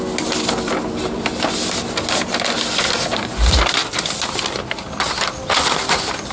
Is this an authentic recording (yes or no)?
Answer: yes